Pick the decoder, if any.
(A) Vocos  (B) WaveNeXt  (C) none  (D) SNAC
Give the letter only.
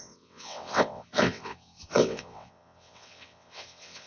B